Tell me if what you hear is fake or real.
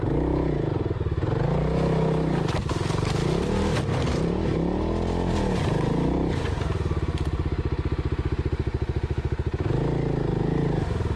real